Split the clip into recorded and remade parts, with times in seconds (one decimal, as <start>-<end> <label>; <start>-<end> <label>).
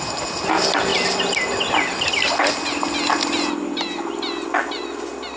0.0-5.4 recorded